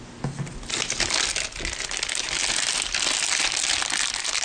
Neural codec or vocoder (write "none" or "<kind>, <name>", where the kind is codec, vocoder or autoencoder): none